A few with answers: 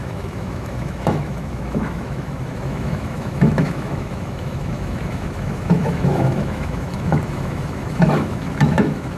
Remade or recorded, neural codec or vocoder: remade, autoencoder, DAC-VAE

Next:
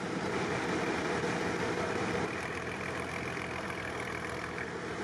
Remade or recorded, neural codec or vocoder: recorded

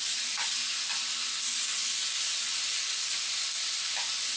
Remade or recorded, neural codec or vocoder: recorded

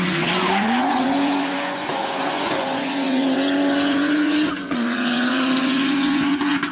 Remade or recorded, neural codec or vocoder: remade, vocoder, Vocos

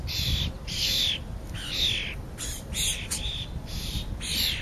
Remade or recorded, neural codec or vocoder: recorded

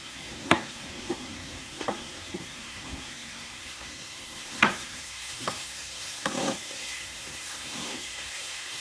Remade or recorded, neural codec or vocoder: remade, codec, SNAC